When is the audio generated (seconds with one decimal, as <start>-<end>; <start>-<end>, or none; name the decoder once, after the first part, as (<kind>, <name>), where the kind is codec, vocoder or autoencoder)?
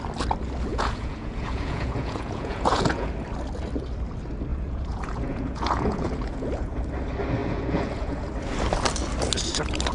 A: 0.7-3.1 (vocoder, Vocos); 4.5-6.8; 7.4-8.3